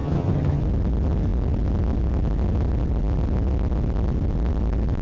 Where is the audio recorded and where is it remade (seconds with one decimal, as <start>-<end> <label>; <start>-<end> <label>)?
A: 0.0-0.6 remade; 0.6-5.0 recorded